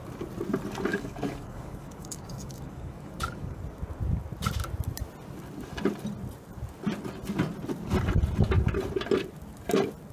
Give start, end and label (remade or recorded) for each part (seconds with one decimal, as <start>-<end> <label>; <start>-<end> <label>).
0.0-0.9 recorded; 0.9-3.6 remade; 3.6-10.1 recorded